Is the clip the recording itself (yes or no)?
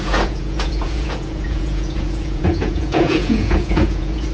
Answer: no